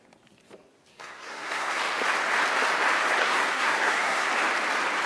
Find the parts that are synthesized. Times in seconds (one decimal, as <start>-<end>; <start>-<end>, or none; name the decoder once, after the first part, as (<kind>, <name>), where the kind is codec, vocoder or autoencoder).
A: 0.9-1.8 (codec, SNAC); 3.2-4.3